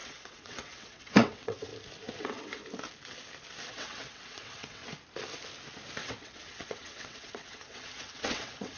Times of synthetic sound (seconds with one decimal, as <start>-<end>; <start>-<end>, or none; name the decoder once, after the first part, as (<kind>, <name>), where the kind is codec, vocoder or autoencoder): 0.0-1.7 (vocoder, WaveNeXt); 2.2-2.6; 3.7-4.8; 6.0-8.8